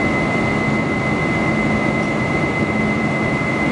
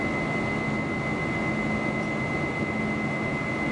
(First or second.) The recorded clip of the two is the second